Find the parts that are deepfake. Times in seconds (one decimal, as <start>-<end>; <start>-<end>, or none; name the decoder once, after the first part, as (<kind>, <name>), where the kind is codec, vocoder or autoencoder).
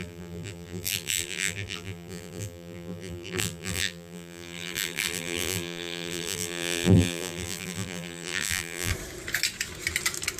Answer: 0.0-8.9 (vocoder, BigVGAN v2)